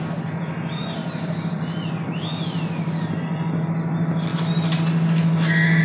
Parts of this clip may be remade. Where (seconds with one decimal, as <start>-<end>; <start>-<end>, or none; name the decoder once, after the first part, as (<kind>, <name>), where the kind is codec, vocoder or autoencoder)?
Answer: none